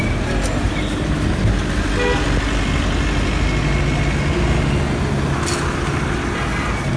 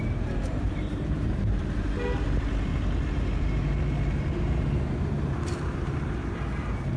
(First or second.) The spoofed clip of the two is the second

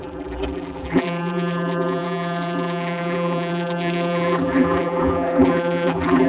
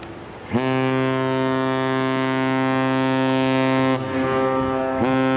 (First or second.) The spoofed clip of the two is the first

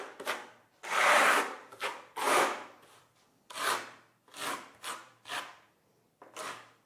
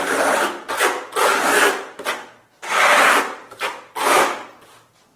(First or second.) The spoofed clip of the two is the first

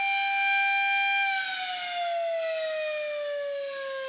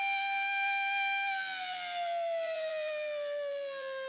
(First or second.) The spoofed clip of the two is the second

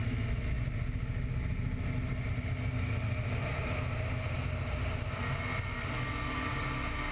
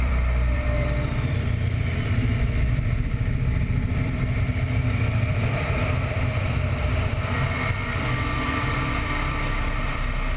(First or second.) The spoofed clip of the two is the second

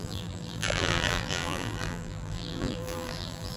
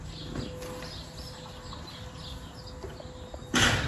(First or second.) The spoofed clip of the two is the first